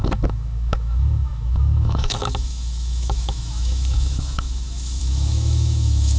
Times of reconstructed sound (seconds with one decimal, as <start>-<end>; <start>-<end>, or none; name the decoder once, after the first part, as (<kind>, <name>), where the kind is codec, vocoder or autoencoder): 0.0-6.2 (autoencoder, DAC-VAE)